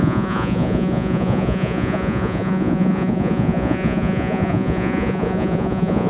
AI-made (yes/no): yes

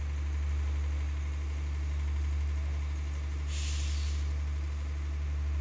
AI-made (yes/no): no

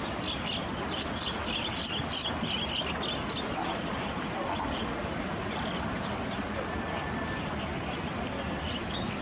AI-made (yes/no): no